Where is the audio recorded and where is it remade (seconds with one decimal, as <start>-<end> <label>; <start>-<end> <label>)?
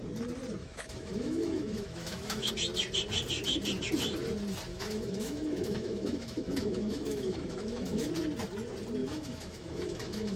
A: 0.0-0.6 recorded; 0.6-2.5 remade; 2.5-4.7 recorded; 4.7-8.1 remade; 8.1-9.0 recorded; 9.0-10.4 remade